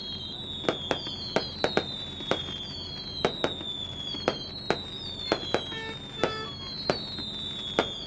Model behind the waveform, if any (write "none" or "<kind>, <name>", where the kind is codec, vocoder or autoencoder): none